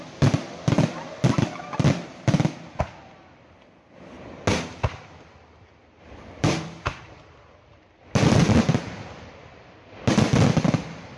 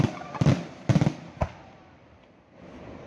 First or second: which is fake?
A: second